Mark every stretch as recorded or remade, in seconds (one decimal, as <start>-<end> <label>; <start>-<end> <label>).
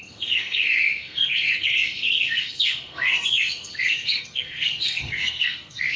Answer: 0.0-6.0 remade